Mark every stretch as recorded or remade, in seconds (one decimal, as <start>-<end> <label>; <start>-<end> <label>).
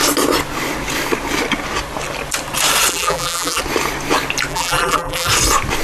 0.0-2.9 recorded; 2.9-3.6 remade; 3.6-4.5 recorded; 4.5-5.3 remade; 5.3-5.8 recorded